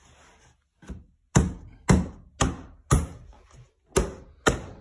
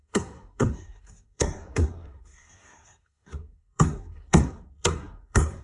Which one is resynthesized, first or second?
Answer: second